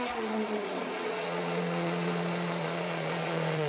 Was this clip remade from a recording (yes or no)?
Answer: yes